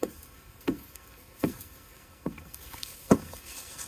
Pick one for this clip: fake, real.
fake